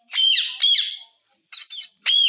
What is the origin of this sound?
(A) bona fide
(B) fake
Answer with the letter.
A